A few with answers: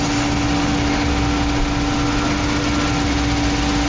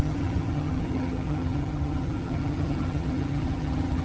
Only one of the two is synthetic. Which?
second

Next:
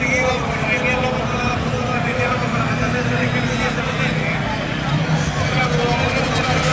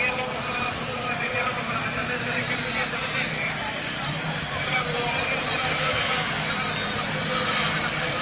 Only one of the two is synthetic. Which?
second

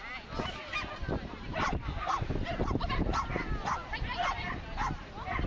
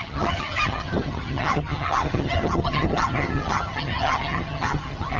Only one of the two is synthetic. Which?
second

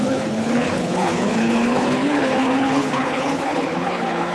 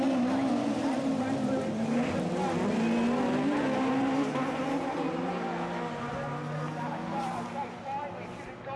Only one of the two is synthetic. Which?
first